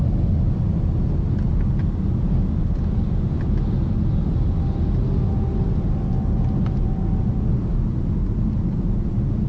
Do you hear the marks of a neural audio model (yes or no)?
no